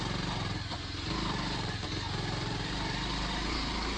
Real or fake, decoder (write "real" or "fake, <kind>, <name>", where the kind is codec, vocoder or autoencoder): fake, vocoder, BigVGAN v2